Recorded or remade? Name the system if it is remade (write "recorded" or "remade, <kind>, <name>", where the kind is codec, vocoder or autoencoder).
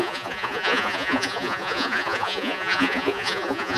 remade, vocoder, Vocos